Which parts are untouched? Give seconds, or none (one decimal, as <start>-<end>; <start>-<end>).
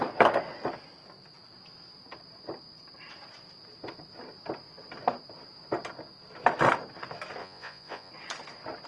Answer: 0.0-7.4; 8.1-8.9